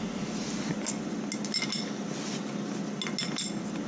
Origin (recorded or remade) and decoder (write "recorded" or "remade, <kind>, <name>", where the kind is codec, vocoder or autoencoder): recorded